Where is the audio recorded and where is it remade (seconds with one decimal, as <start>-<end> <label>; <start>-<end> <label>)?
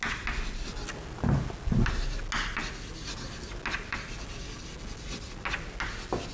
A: 0.0-6.3 recorded